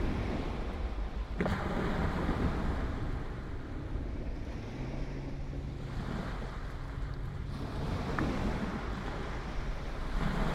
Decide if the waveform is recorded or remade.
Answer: recorded